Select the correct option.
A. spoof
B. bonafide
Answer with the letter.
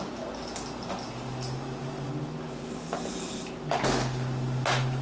B